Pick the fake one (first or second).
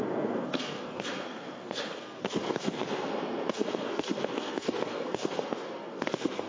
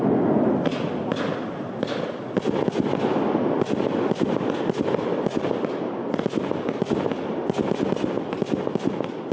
first